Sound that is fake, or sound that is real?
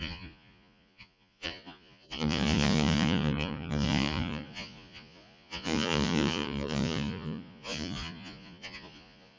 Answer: fake